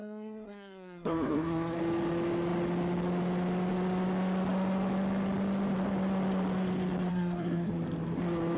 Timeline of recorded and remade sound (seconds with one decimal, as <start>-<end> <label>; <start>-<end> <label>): 0.0-1.8 remade; 1.8-7.1 recorded; 7.1-7.7 remade; 7.7-8.6 recorded